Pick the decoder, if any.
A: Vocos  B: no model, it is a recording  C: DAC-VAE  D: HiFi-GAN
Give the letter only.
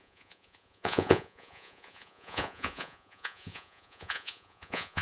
A